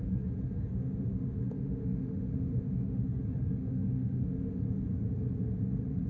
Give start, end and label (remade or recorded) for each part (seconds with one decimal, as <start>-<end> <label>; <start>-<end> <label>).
0.0-0.7 recorded; 0.7-3.2 remade; 3.2-3.6 recorded; 3.6-4.6 remade; 4.6-6.1 recorded